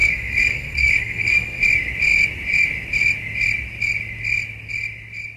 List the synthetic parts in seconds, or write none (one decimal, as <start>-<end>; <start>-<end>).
0.0-1.6